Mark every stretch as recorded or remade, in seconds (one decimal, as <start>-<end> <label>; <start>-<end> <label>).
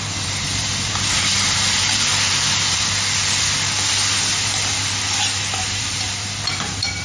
0.0-2.1 remade; 2.1-5.6 recorded; 5.6-7.0 remade